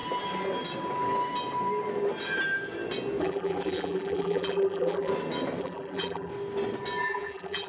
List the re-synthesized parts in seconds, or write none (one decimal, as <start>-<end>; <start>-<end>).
3.2-5.1; 5.6-6.3; 7.0-7.7